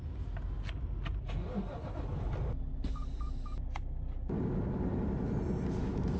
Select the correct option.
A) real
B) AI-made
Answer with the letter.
A